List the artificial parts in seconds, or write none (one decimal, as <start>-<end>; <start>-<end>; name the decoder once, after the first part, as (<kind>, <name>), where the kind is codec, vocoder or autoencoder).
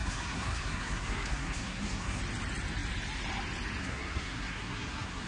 0.0-2.2 (codec, SNAC); 3.8-5.3